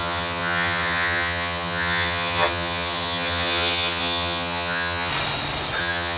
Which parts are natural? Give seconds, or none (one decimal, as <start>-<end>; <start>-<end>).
5.1-5.8